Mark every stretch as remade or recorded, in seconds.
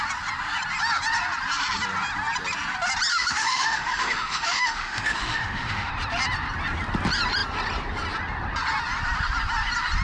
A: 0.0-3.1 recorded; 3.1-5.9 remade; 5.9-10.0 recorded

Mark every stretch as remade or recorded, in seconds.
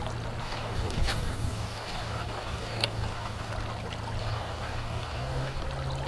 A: 0.0-0.4 recorded; 0.4-3.5 remade; 3.5-4.2 recorded; 4.2-5.6 remade; 5.6-6.1 recorded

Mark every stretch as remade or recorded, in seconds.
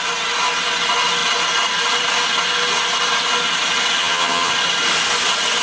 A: 0.0-4.0 recorded; 4.0-4.5 remade; 4.5-5.6 recorded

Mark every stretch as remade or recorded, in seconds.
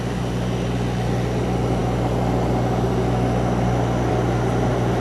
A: 0.0-5.0 recorded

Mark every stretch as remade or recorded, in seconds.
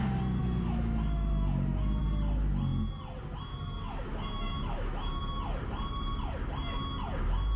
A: 0.0-0.4 recorded; 0.4-2.0 remade; 2.0-3.5 recorded; 3.5-5.4 remade; 5.4-7.6 recorded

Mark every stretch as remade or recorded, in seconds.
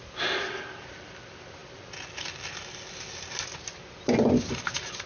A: 0.0-5.1 recorded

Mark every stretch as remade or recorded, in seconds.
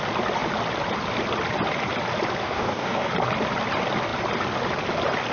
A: 0.0-2.4 recorded; 2.4-3.1 remade; 3.1-5.3 recorded